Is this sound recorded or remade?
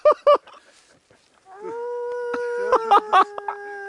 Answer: recorded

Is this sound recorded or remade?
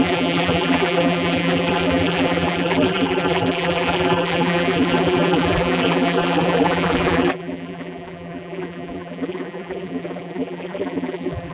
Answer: remade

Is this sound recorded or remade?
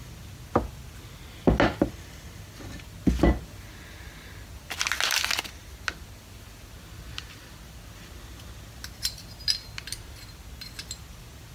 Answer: recorded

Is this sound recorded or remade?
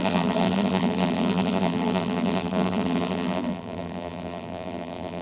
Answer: remade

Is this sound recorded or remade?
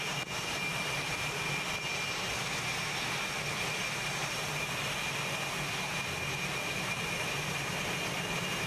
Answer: recorded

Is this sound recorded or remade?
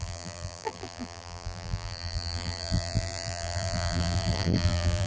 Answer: remade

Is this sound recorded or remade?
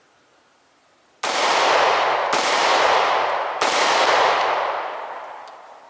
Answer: recorded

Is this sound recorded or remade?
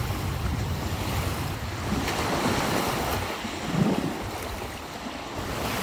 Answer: recorded